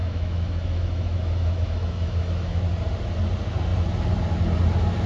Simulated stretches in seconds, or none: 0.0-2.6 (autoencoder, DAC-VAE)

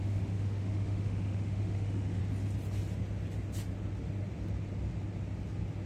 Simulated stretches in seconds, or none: 0.0-2.2 (autoencoder, DAC-VAE)

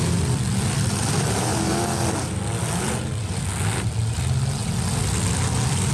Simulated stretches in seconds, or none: none

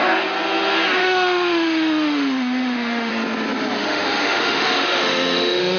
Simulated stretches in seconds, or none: 1.0-3.1 (autoencoder, DAC-VAE); 3.8-5.8

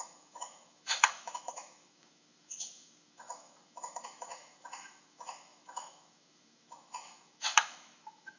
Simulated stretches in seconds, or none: 0.0-8.4 (autoencoder, DAC-VAE)

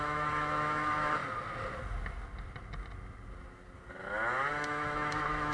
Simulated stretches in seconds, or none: 0.0-1.2 (autoencoder, DAC-VAE); 4.5-5.5

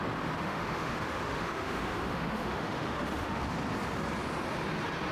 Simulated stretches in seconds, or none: 0.4-3.5 (autoencoder, DAC-VAE)

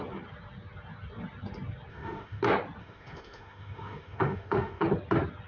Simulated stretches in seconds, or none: 1.9-2.4 (autoencoder, DAC-VAE); 2.8-4.8